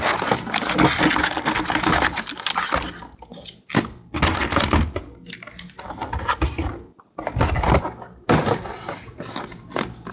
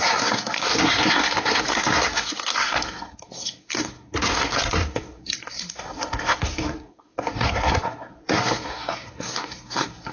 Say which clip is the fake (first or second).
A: second